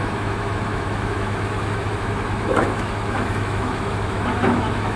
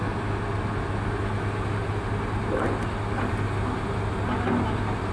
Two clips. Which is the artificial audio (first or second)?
first